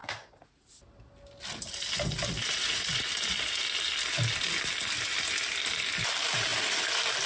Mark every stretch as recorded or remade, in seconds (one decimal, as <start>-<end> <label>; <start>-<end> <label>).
0.0-0.7 remade; 0.7-2.4 recorded; 2.4-3.0 remade; 3.0-7.3 recorded